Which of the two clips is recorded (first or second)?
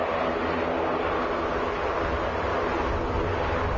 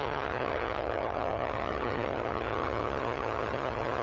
first